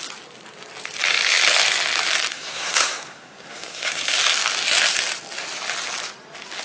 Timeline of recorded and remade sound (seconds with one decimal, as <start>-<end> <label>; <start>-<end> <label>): 0.0-2.3 recorded; 2.3-4.0 remade; 4.0-6.6 recorded